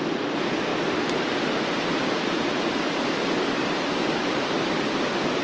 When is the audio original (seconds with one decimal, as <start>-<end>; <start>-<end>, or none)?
0.0-5.4